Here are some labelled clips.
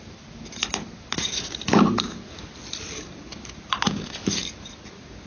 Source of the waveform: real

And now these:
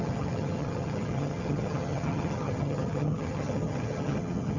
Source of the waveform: fake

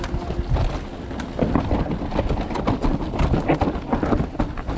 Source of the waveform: real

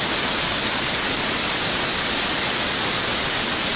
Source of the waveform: real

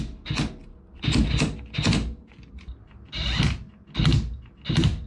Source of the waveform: real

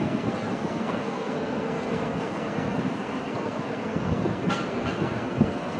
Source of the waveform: fake